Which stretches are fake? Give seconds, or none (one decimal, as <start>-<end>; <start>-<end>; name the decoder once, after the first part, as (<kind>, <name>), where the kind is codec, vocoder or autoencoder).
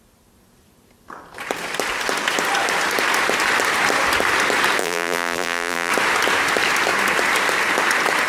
4.8-5.9 (vocoder, BigVGAN v2)